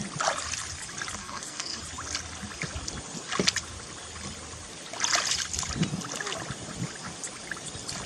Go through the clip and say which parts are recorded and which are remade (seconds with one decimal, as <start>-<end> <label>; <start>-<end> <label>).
0.0-1.2 recorded; 1.2-1.8 remade; 1.8-8.1 recorded